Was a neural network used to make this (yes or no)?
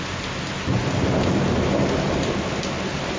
no